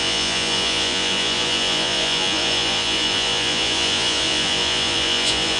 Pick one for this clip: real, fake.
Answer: fake